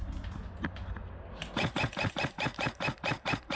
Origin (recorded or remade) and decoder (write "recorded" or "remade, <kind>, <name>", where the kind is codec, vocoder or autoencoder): recorded